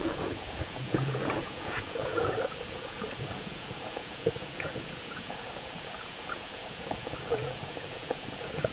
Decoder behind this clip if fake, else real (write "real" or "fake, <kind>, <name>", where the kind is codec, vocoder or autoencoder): fake, vocoder, Vocos